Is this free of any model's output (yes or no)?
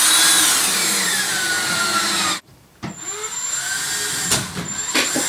yes